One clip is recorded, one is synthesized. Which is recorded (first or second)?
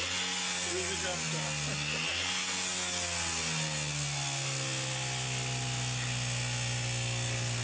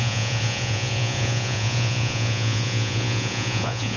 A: first